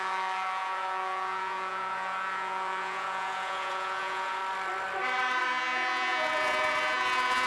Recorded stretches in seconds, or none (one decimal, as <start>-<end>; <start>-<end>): 4.4-5.5